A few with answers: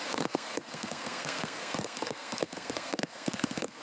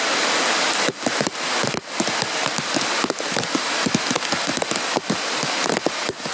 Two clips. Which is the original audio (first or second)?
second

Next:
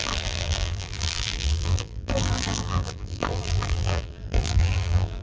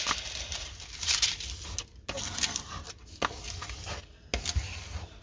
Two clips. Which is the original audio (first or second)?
second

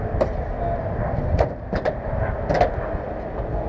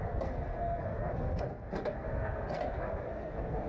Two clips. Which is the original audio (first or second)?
first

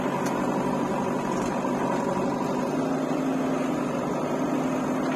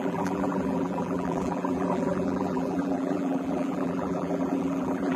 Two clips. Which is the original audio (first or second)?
first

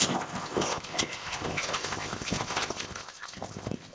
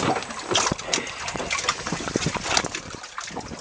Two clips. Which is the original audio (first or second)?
second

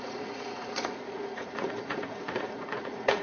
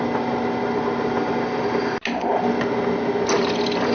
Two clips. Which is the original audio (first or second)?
second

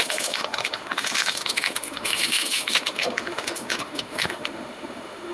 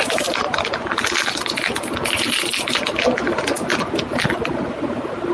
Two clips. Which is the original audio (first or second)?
second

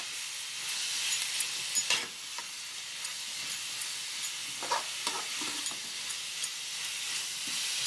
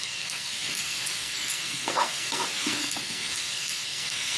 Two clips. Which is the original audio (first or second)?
first